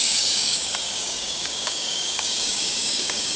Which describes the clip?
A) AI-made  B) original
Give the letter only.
A